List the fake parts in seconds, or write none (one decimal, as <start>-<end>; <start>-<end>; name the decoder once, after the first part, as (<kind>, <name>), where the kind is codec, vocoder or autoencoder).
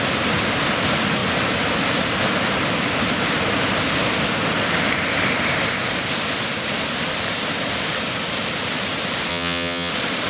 9.3-9.9 (vocoder, HiFi-GAN)